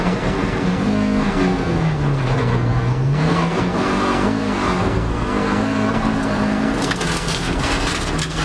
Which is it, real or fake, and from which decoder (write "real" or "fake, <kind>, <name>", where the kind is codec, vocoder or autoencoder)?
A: fake, codec, SNAC